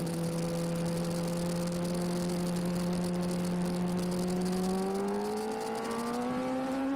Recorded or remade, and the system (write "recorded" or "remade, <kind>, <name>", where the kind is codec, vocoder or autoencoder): recorded